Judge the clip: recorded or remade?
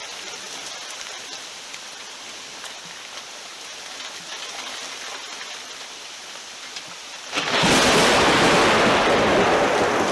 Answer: recorded